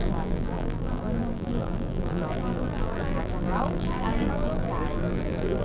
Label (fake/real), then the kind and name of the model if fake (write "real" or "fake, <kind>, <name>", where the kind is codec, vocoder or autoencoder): fake, vocoder, BigVGAN v2